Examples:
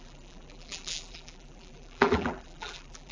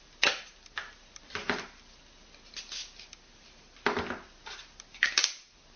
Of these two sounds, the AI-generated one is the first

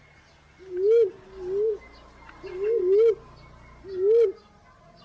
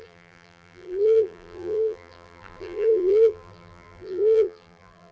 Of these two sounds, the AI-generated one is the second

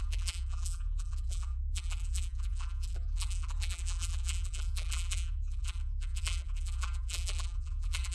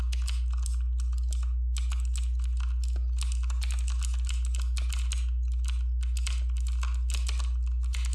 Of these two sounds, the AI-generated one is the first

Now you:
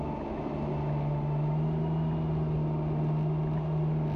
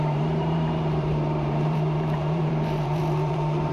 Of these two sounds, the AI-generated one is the second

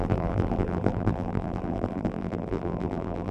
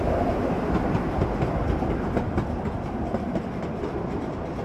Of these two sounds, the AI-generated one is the first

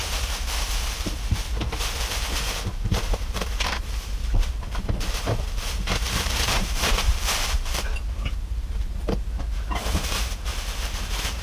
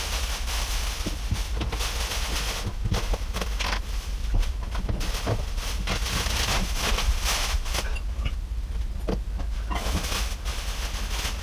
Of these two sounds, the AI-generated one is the first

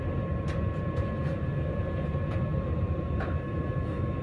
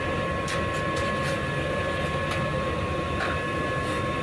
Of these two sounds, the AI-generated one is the first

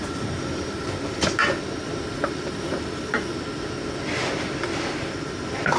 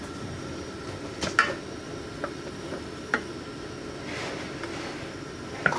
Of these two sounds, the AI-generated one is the first